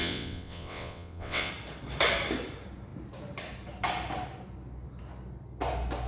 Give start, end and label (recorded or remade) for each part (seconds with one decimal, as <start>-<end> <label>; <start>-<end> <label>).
0.0-1.5 remade; 1.5-6.1 recorded